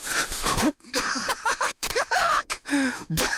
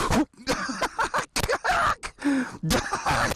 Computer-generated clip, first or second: first